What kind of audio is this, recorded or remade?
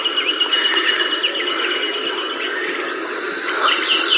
recorded